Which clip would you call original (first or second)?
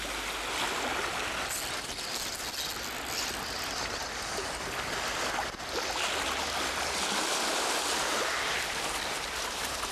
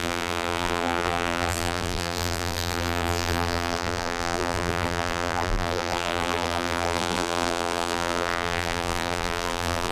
first